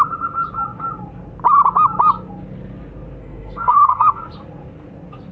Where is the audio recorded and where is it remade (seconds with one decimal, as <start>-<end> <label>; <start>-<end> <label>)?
0.0-3.2 recorded; 3.2-4.2 remade; 4.2-5.3 recorded